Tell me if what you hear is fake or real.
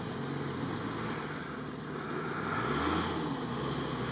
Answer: real